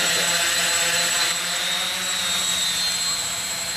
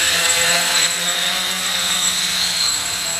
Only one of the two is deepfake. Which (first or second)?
second